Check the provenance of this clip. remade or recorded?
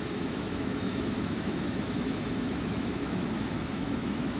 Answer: remade